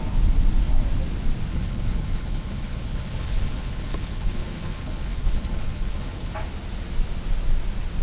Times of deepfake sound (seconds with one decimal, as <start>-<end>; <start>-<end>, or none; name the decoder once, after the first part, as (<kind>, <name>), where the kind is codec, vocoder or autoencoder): 1.5-6.3 (codec, HILCodec)